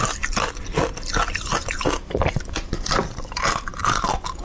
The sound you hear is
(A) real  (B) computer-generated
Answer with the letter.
A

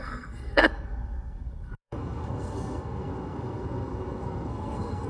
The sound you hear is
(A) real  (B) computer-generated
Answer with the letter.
B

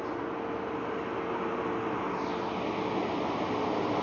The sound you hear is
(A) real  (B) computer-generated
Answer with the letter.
A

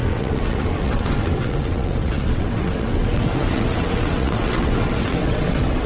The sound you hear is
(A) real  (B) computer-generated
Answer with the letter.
B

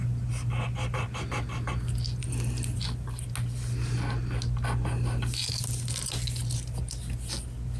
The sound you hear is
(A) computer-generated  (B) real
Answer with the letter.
B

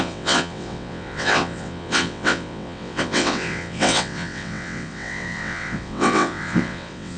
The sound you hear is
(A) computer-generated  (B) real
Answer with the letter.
A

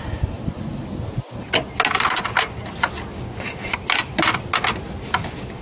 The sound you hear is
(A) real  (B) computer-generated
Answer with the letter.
A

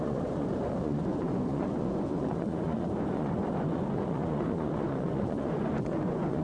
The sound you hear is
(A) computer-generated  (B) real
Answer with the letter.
A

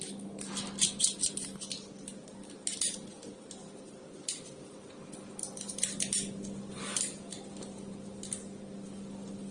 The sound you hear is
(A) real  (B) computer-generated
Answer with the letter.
A